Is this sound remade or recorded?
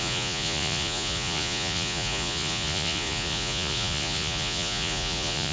remade